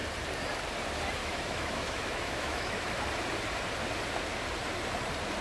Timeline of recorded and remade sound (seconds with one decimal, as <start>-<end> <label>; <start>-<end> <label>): 0.0-1.2 recorded; 1.2-2.9 remade; 2.9-5.4 recorded